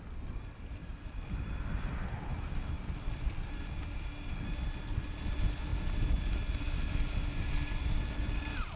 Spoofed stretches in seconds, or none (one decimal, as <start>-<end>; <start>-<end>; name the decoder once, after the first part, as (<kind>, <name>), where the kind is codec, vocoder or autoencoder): none